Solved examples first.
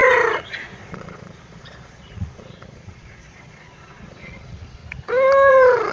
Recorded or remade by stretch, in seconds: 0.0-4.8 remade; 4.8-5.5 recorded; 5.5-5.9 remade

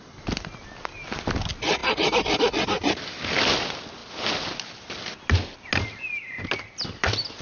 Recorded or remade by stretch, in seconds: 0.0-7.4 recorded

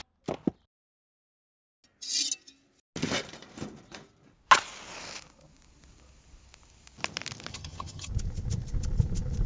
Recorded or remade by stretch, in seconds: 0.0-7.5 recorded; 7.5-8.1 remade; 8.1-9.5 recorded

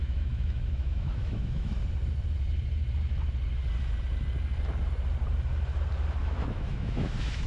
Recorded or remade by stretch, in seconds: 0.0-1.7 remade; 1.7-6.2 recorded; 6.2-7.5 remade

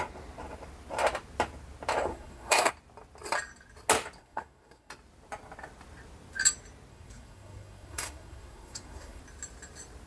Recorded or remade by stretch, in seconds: 0.0-2.1 recorded; 2.1-2.7 remade; 2.7-4.2 recorded; 4.2-4.9 remade; 4.9-6.9 recorded; 6.9-9.2 remade; 9.2-10.1 recorded